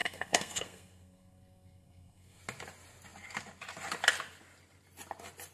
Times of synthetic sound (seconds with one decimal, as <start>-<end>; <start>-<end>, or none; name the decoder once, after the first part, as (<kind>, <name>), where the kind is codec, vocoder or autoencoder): 0.0-2.4 (codec, SNAC)